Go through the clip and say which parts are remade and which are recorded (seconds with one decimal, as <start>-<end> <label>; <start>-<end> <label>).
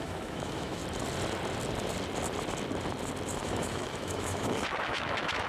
0.0-0.8 remade; 0.8-3.4 recorded; 3.4-5.5 remade